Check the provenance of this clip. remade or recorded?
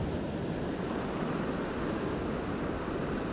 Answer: recorded